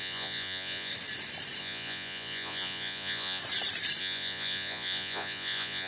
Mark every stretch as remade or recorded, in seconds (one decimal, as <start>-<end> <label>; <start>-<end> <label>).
0.0-0.9 remade; 0.9-1.6 recorded; 1.6-3.4 remade; 3.4-4.0 recorded; 4.0-5.9 remade